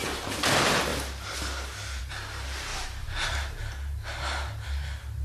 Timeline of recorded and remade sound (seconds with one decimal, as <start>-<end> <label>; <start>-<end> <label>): 0.0-2.7 recorded; 2.7-3.6 remade; 3.6-5.2 recorded